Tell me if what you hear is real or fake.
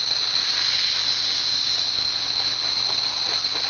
real